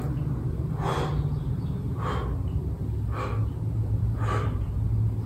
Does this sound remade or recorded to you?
recorded